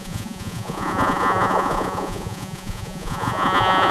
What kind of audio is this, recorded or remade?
remade